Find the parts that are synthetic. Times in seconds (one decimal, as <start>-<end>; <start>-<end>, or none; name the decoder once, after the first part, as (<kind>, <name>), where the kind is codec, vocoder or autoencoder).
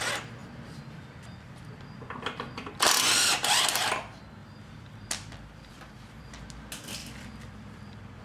0.4-3.6 (vocoder, BigVGAN v2); 4.4-6.3; 7.0-8.2